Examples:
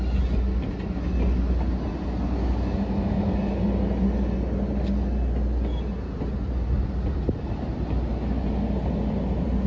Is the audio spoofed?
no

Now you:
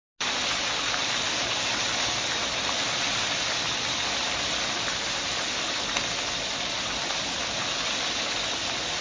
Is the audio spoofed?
no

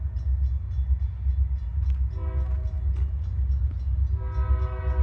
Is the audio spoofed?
no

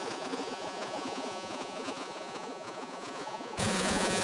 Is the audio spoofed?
yes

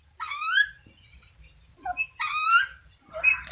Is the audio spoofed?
no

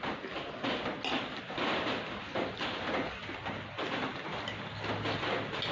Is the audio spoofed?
no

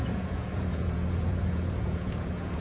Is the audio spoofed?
yes